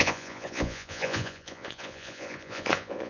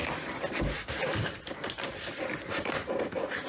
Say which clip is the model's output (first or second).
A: first